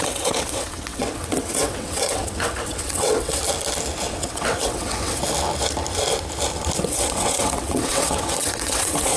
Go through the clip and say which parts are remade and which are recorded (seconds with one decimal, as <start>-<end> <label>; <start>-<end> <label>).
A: 0.0-3.4 remade; 3.4-4.1 recorded; 4.1-5.2 remade; 5.2-6.8 recorded; 6.8-9.2 remade